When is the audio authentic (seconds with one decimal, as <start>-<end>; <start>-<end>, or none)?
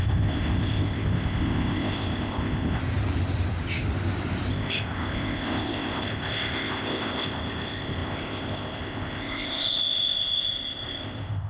2.8-4.5